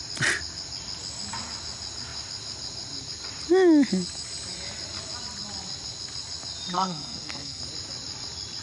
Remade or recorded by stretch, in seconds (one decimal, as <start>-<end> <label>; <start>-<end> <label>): 0.0-6.7 recorded; 6.7-7.6 remade; 7.6-8.6 recorded